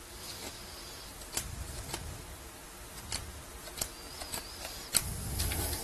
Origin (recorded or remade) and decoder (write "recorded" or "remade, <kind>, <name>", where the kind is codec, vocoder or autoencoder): remade, vocoder, BigVGAN v2